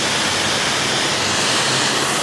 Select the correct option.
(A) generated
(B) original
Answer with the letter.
B